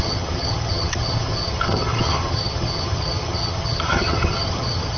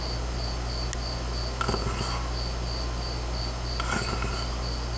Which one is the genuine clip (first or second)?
second